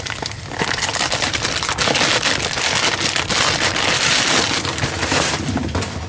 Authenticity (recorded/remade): recorded